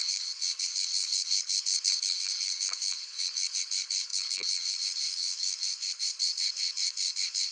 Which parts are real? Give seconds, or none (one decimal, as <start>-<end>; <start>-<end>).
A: none